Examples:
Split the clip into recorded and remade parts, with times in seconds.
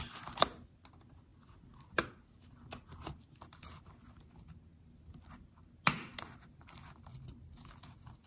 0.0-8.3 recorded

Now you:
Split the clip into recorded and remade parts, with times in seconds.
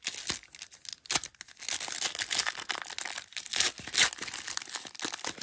0.0-5.4 recorded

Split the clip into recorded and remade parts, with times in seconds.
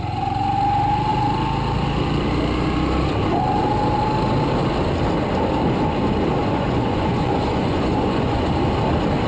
0.0-6.4 recorded; 6.4-8.5 remade; 8.5-9.3 recorded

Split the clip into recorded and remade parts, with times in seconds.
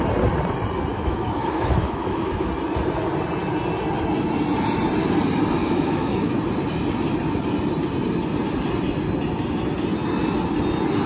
0.0-0.9 recorded; 0.9-2.5 remade; 2.5-5.6 recorded; 5.6-6.3 remade; 6.3-11.1 recorded